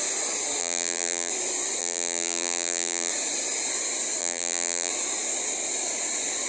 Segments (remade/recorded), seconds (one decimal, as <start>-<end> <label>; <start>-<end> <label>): 0.0-0.6 recorded; 0.6-1.3 remade; 1.3-1.8 recorded; 1.8-3.1 remade; 3.1-4.2 recorded; 4.2-4.9 remade; 4.9-6.5 recorded